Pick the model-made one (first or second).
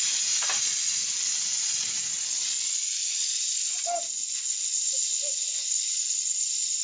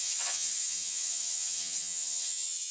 second